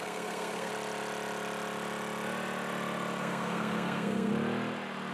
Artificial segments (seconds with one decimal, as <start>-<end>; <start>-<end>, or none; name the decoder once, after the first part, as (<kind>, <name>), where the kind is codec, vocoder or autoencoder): 0.0-0.7 (codec, SNAC); 3.2-4.3